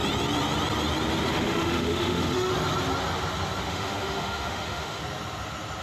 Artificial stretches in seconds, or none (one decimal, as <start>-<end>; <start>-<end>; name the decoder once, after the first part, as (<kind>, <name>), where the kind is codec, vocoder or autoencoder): 1.3-2.5 (autoencoder, DAC-VAE); 3.7-5.0